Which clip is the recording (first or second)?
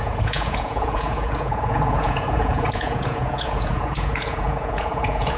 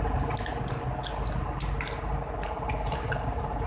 second